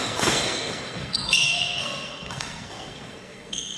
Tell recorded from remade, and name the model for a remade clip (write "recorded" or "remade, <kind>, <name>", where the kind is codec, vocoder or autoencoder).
remade, codec, SNAC